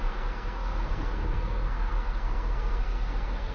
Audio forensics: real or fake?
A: fake